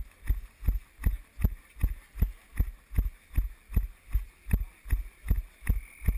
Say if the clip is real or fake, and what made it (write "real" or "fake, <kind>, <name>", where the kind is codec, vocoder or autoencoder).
real